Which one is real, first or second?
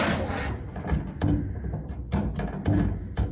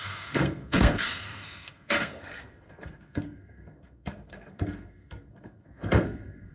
first